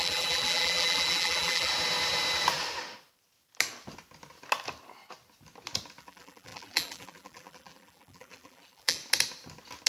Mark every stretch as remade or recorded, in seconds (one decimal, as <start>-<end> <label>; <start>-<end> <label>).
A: 0.0-1.7 remade; 1.7-6.0 recorded; 6.0-9.0 remade; 9.0-9.9 recorded